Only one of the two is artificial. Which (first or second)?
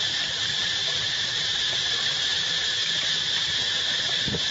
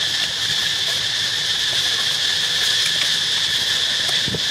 first